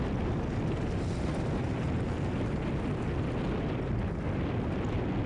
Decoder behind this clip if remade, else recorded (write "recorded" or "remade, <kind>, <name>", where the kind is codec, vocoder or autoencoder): recorded